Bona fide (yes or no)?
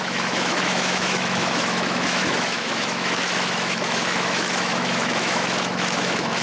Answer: no